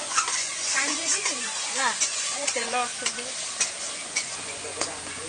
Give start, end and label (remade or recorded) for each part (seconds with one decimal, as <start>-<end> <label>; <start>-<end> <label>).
0.0-2.9 remade; 2.9-3.9 recorded; 3.9-5.3 remade